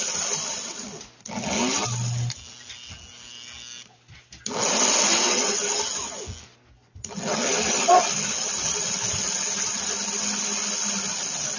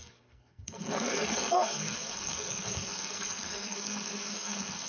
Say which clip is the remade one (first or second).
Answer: second